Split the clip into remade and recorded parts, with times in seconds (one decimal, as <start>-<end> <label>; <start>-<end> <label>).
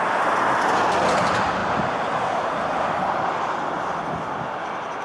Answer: 0.0-5.0 recorded